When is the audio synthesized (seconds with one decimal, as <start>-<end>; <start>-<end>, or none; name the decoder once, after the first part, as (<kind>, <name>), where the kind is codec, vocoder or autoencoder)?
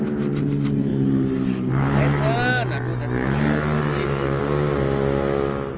none